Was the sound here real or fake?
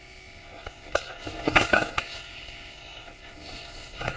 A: fake